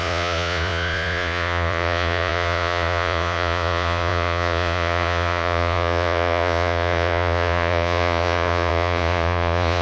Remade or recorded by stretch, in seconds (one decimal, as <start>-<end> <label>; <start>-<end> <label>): 0.0-9.8 remade